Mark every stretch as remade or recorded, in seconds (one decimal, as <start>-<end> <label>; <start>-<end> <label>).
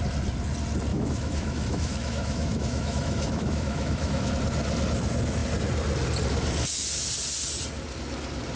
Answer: 0.0-0.9 recorded; 0.9-4.3 remade; 4.3-8.6 recorded